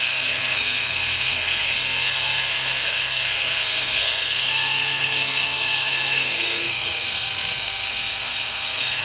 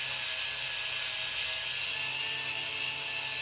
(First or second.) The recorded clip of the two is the second